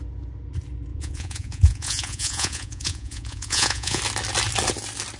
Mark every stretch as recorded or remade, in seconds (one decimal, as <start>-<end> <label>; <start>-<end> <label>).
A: 0.0-0.9 recorded; 0.9-4.0 remade; 4.0-5.2 recorded